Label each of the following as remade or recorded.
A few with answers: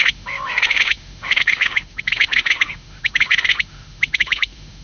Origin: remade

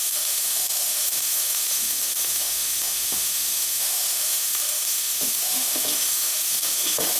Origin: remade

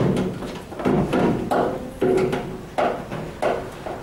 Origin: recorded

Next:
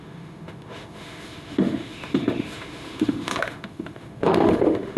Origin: remade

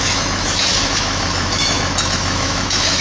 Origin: remade